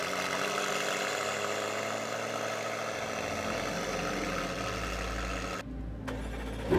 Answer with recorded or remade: recorded